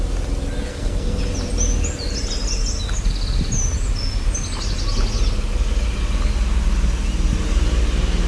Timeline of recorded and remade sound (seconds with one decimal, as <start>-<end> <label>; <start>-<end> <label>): 0.0-0.7 recorded; 0.7-1.2 remade; 1.2-8.3 recorded